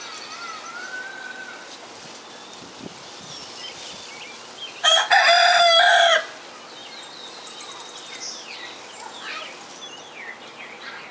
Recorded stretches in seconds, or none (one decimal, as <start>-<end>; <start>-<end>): 0.0-11.1